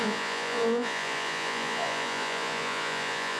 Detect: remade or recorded remade